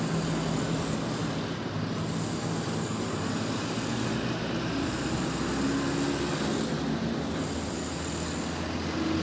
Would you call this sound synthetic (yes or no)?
no